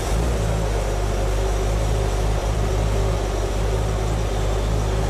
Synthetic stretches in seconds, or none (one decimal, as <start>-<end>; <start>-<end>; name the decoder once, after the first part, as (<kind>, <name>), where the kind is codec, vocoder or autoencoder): 2.4-3.0 (vocoder, BigVGAN v2)